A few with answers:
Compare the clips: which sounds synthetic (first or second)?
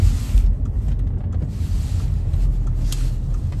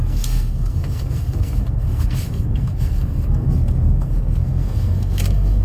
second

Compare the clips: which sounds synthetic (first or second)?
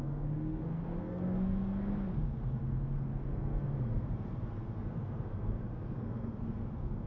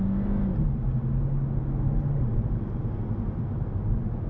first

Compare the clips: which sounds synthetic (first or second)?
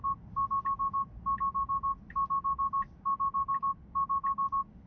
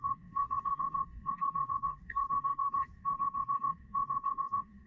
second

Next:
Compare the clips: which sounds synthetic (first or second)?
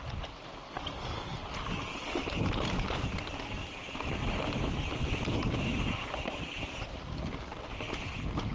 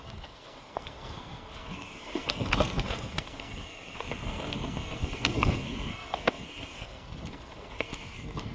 second